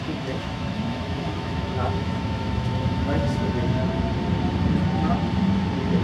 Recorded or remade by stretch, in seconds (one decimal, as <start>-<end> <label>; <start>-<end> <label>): 0.0-3.8 remade; 3.8-6.0 recorded